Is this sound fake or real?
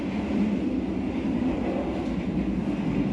real